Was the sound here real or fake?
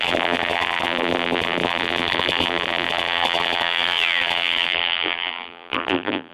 fake